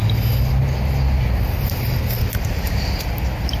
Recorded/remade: recorded